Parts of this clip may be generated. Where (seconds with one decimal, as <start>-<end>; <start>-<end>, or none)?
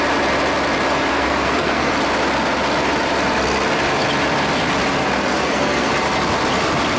1.1-1.9; 5.0-5.9